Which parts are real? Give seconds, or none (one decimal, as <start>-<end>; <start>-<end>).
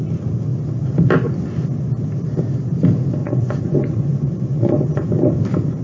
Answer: 0.0-3.2; 5.1-5.8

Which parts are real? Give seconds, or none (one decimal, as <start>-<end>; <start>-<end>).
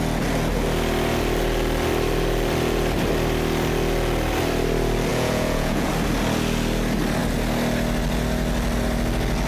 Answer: 0.0-5.1; 5.9-9.5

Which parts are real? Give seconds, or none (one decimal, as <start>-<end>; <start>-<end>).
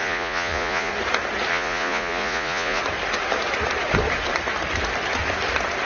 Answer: 0.9-1.5; 2.8-5.9